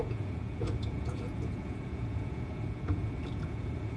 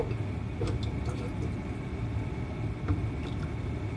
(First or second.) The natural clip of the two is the second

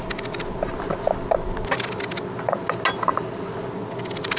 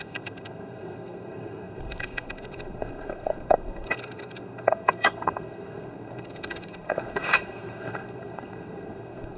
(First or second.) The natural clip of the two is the first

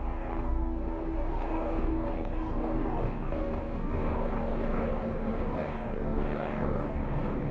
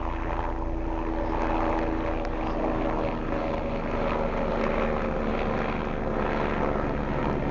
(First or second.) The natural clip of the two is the second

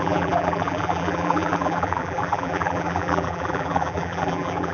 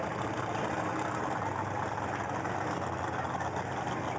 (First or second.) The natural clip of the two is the second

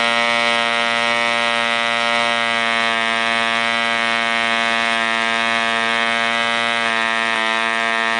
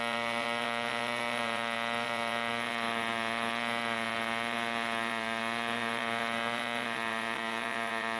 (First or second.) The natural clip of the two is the first